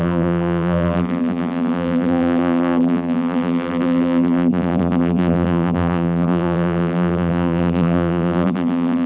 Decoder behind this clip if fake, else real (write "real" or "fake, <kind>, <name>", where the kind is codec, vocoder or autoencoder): fake, vocoder, BigVGAN v2